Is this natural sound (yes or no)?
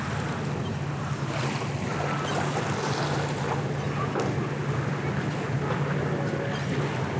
yes